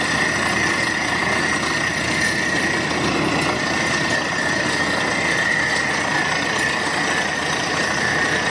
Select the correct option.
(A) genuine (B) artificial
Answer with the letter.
B